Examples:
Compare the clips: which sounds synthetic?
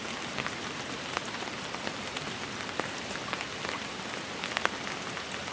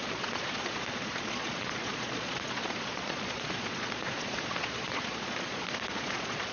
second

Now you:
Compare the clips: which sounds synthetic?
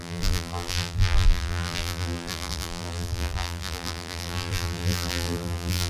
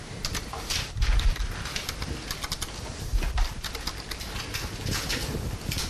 first